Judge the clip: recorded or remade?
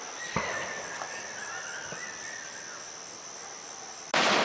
recorded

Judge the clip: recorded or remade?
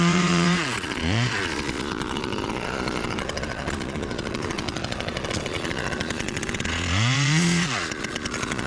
remade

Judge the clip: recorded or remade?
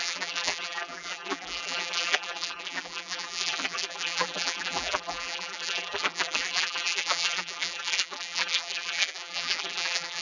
remade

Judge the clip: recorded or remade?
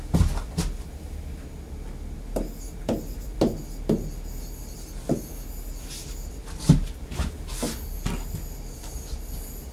recorded